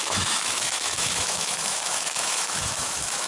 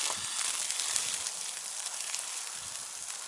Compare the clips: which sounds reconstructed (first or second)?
first